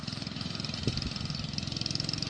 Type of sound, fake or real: real